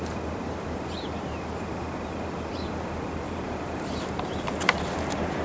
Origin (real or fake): fake